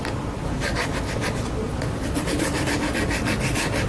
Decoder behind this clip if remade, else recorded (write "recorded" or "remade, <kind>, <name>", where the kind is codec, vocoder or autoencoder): recorded